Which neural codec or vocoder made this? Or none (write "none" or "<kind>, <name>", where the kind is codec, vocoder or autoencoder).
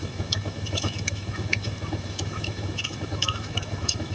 autoencoder, DAC-VAE